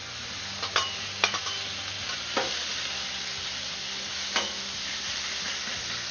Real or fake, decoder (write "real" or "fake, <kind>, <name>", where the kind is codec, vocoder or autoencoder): real